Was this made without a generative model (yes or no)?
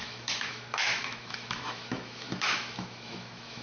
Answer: no